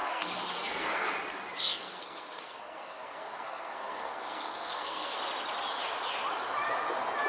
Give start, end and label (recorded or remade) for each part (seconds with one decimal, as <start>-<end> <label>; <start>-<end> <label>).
0.0-1.1 remade; 1.1-1.6 recorded; 1.6-5.2 remade; 5.2-7.3 recorded